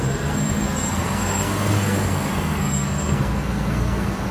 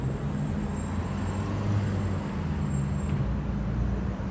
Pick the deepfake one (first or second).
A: first